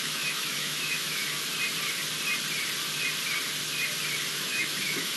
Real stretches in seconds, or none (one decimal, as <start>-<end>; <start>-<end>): 1.2-4.3